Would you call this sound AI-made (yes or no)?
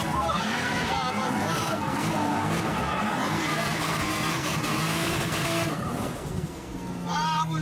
yes